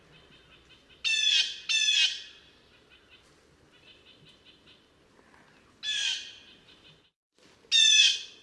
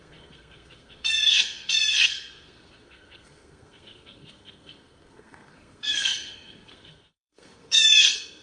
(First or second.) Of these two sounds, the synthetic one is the second